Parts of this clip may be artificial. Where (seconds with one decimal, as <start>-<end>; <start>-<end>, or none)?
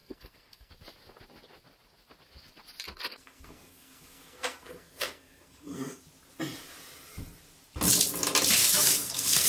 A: 0.0-0.7; 3.1-6.0; 8.6-9.5